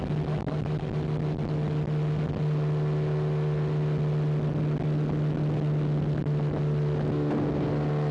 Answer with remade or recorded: recorded